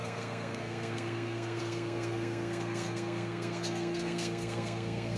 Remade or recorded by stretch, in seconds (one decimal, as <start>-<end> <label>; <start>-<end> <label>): 0.0-5.2 remade